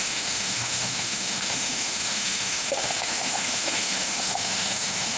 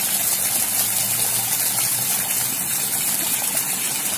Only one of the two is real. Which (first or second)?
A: second